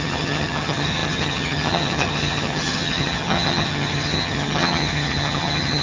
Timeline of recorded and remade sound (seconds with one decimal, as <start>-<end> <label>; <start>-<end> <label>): 0.0-5.8 remade